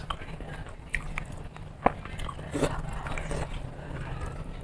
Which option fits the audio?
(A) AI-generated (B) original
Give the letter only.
B